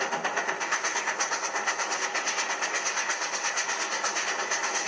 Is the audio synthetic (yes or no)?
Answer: no